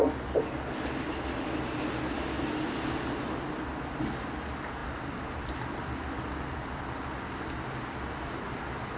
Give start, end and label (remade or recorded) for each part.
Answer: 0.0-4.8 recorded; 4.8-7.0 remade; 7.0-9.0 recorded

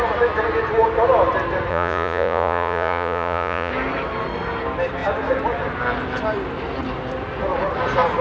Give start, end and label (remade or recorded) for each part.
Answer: 0.0-1.7 recorded; 1.7-3.7 remade; 3.7-8.2 recorded